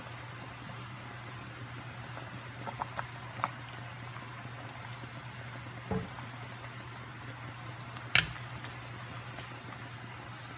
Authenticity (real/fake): real